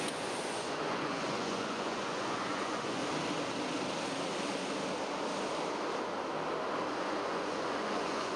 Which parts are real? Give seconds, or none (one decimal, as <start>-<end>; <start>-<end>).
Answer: 3.0-6.9